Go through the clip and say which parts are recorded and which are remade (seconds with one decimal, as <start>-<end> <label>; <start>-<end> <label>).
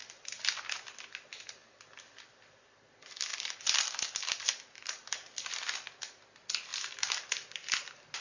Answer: 0.0-8.2 recorded